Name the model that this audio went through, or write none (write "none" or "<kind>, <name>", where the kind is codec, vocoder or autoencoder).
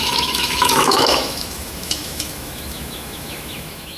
autoencoder, DAC-VAE